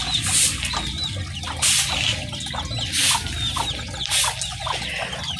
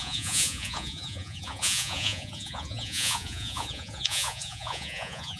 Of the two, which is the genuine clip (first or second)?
first